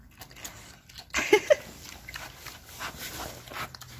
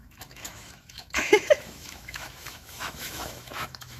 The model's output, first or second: second